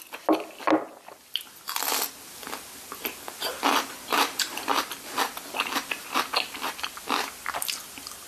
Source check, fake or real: real